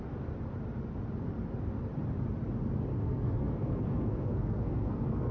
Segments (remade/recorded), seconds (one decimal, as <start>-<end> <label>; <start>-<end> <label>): 0.0-2.9 recorded; 2.9-5.3 remade